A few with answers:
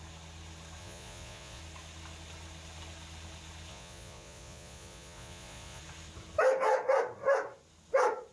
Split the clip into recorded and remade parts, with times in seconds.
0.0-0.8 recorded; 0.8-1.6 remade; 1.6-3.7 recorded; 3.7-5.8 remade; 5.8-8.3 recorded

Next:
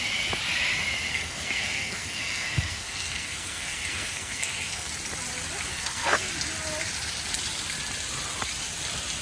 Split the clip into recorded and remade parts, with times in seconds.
0.0-1.1 recorded; 1.1-4.9 remade; 4.9-5.7 recorded; 5.7-6.3 remade; 6.3-9.2 recorded

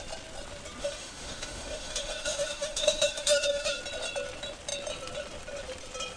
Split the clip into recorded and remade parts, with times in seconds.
0.0-0.8 recorded; 0.8-3.8 remade; 3.8-6.2 recorded

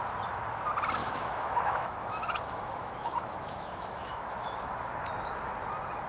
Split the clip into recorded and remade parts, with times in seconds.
0.0-1.0 recorded; 1.0-4.7 remade; 4.7-6.1 recorded

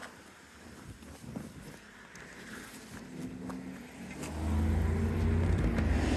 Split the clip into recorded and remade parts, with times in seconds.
0.0-0.5 remade; 0.5-6.2 recorded

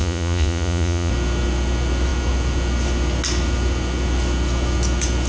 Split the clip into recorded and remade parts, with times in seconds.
0.0-1.1 remade; 1.1-5.3 recorded